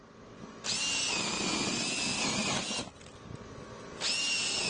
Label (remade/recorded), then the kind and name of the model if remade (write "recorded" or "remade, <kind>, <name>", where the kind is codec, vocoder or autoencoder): recorded